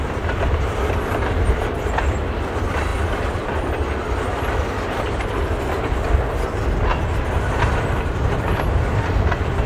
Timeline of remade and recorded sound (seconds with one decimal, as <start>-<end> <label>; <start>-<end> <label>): 0.0-6.9 remade; 6.9-7.6 recorded; 7.6-9.7 remade